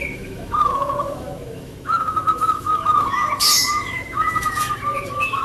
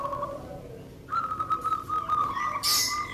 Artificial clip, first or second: first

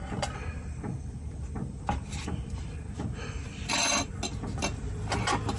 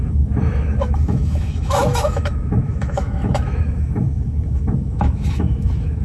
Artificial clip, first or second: second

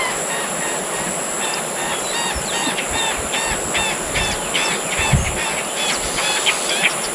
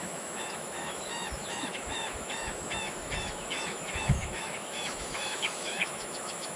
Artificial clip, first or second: second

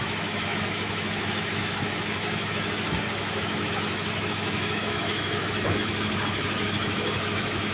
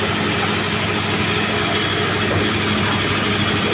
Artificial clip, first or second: first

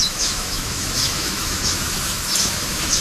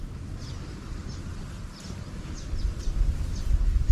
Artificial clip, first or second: first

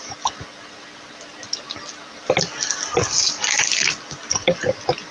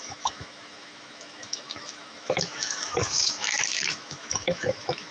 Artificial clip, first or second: second